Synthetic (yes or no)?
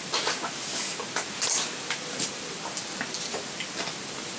no